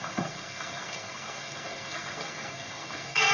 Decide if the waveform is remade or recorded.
remade